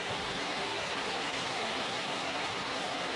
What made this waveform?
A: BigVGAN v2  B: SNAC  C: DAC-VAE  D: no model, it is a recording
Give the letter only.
B